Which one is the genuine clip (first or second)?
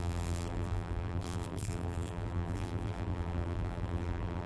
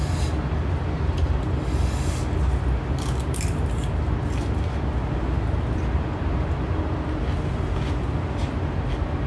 second